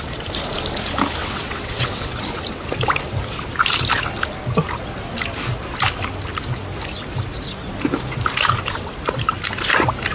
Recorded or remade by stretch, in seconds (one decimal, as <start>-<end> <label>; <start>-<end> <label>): 0.0-1.2 recorded; 1.2-2.2 remade; 2.2-10.1 recorded